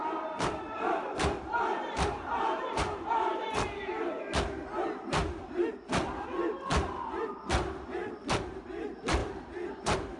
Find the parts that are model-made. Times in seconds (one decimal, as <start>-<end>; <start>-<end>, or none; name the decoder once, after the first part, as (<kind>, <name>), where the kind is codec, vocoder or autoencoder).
0.0-3.5 (vocoder, BigVGAN v2); 9.2-9.7